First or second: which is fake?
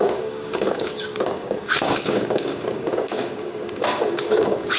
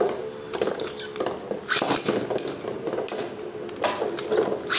first